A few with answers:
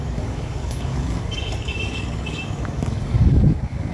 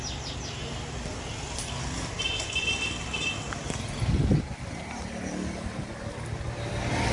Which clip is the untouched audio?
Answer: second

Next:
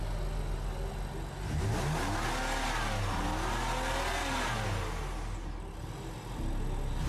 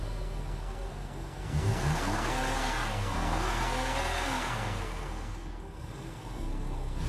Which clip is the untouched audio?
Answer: first